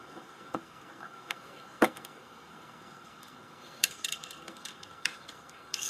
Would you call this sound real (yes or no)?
no